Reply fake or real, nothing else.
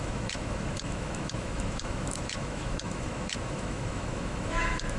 fake